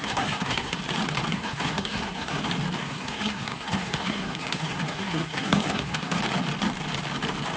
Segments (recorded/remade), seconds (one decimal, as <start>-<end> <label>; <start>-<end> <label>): 0.0-0.8 remade; 0.8-1.3 recorded; 1.3-2.4 remade; 2.4-2.8 recorded; 2.8-6.2 remade; 6.2-7.6 recorded